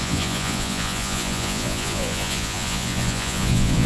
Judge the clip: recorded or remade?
remade